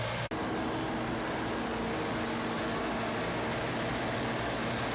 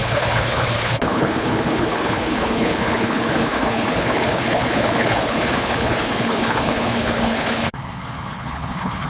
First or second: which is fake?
second